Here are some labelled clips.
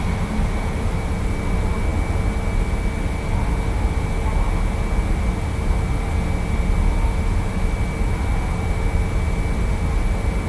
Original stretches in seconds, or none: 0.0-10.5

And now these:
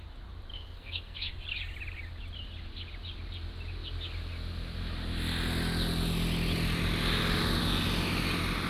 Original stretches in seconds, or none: 0.0-0.5; 1.3-8.7

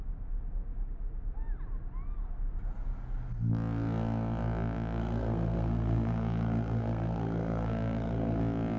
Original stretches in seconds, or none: 0.0-5.0; 8.4-8.8

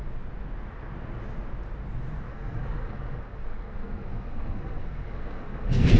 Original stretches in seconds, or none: 0.0-2.3

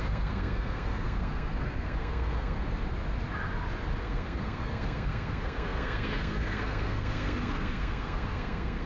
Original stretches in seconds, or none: 2.6-4.0

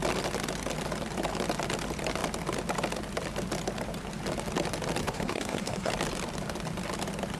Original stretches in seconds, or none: 0.0-5.0; 5.9-7.4

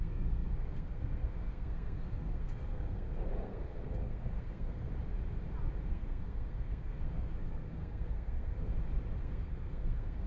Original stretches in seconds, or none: 4.9-5.9; 8.7-9.2

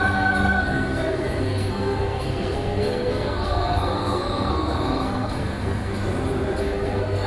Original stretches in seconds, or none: 5.9-6.6